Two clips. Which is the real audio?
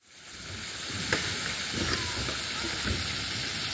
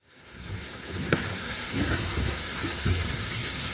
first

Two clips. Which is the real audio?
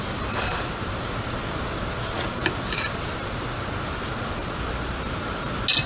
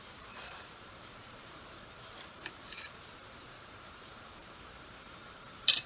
first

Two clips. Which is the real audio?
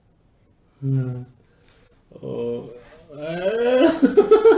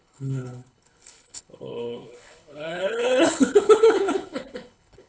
first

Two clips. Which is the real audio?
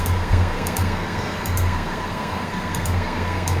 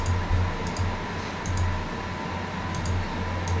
second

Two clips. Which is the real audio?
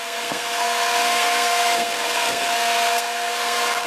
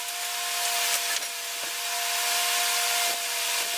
second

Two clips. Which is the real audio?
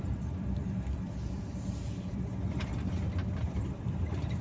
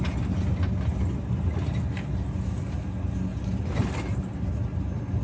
second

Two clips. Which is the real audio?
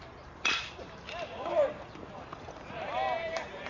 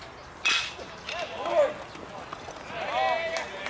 second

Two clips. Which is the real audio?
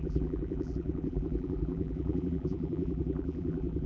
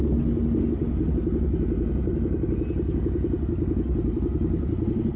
second